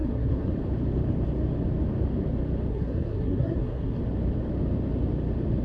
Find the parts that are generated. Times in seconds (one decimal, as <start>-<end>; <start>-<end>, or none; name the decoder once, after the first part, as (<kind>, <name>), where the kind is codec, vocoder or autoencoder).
0.0-0.5 (codec, SNAC); 2.7-4.0